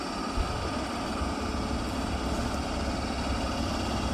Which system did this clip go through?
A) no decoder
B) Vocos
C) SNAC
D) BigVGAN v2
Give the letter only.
A